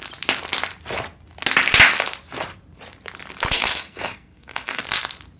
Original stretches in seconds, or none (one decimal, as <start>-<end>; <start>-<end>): 0.0-3.5; 4.8-5.4

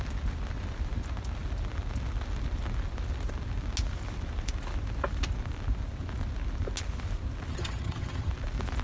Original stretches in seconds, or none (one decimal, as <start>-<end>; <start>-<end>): 0.0-7.5; 8.3-8.8